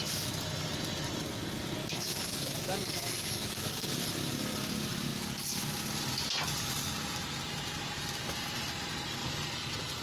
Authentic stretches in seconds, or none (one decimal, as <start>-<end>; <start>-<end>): 0.0-1.8; 3.9-10.0